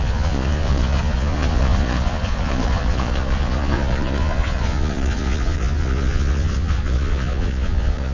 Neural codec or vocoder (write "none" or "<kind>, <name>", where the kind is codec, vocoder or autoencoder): vocoder, Vocos